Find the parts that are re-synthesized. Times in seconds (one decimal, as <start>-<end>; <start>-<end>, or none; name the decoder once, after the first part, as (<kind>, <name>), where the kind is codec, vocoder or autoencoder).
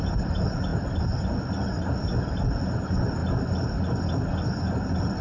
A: none